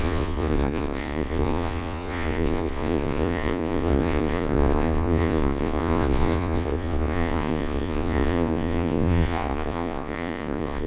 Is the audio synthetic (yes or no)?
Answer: yes